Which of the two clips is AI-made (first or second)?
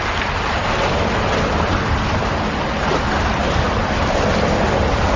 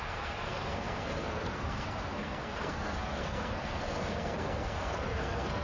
second